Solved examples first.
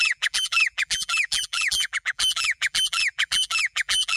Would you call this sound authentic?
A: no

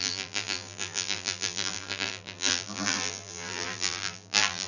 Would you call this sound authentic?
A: no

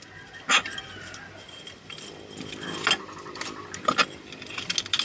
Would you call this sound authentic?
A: yes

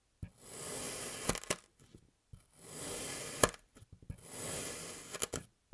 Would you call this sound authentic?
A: yes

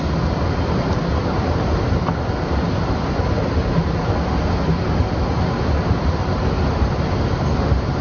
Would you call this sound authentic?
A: yes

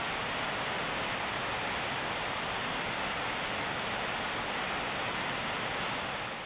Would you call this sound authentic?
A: yes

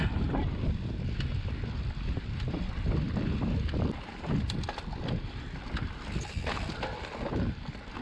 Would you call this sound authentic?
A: yes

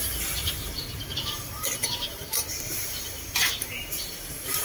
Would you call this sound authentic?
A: no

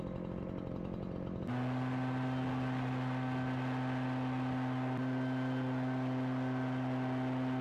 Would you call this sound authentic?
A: yes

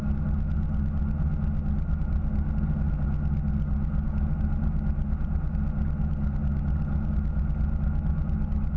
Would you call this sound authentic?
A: yes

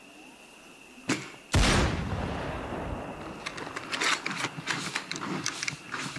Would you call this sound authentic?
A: yes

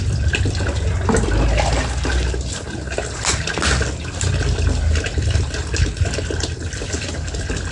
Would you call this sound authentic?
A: yes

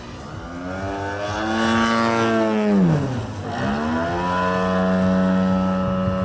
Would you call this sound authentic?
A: yes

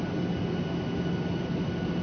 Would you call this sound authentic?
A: yes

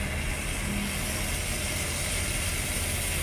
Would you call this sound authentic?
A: yes